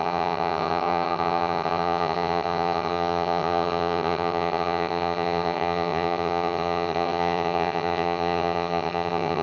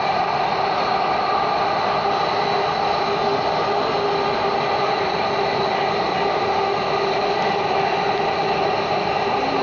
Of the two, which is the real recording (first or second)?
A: second